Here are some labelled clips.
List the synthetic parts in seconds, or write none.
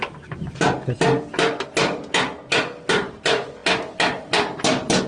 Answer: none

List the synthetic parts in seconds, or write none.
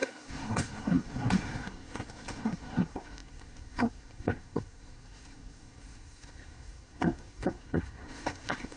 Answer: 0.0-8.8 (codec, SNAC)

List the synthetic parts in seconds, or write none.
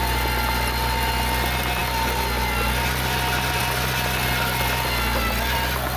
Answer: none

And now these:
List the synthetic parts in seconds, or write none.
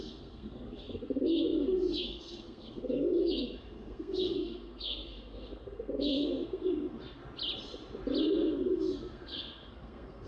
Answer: 0.0-7.2 (codec, SNAC); 8.2-10.3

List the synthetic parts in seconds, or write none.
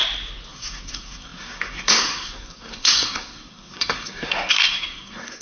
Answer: 0.5-5.4 (codec, SNAC)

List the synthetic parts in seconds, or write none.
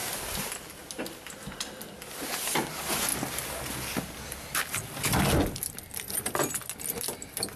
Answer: none